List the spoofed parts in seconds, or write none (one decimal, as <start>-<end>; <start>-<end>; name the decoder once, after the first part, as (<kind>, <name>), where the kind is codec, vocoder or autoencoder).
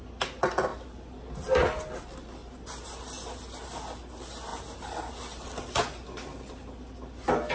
none